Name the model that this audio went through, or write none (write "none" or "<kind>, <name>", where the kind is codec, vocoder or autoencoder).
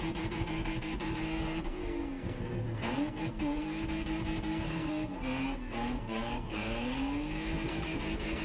codec, SNAC